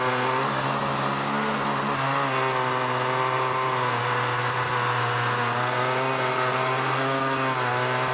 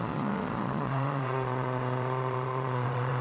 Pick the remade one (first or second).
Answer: second